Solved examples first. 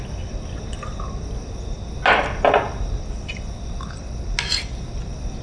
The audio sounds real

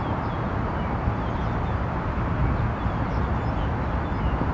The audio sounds real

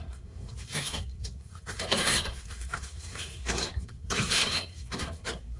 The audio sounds fake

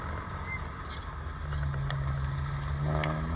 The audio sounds real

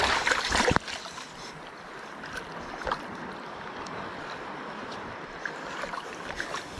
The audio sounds real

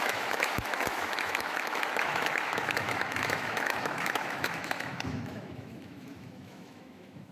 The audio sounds fake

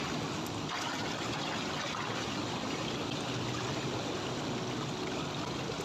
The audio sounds real